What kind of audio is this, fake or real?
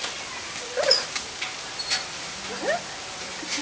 real